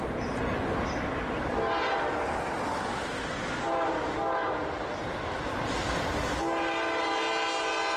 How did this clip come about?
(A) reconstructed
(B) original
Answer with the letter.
B